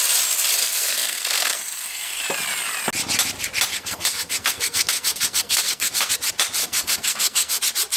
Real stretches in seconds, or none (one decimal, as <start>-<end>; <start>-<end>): 0.0-0.6; 2.2-3.7; 6.1-6.6; 7.6-8.0